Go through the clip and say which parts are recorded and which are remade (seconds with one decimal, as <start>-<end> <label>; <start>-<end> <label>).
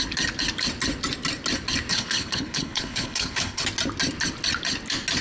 0.0-1.9 recorded; 1.9-3.6 remade; 3.6-5.2 recorded